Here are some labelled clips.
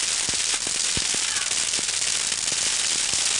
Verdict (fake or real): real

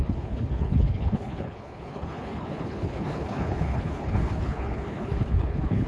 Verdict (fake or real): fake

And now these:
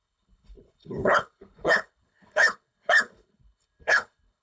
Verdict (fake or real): fake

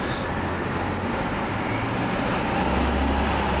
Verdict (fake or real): real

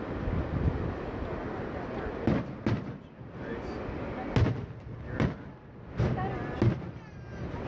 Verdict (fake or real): real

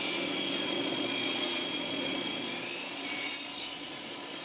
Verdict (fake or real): fake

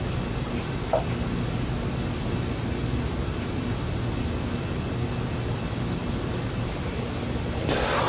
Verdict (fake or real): real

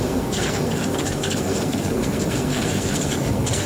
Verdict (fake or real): fake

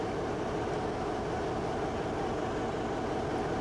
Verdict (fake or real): real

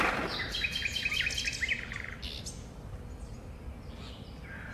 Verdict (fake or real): real